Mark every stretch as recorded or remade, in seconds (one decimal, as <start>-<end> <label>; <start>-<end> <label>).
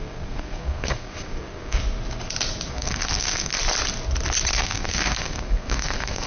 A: 0.0-1.8 remade; 1.8-2.7 recorded; 2.7-3.5 remade; 3.5-4.5 recorded; 4.5-6.3 remade